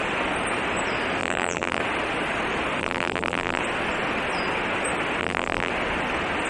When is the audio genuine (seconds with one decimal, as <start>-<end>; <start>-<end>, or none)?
0.0-1.2; 1.8-2.8; 3.6-5.2; 5.7-6.5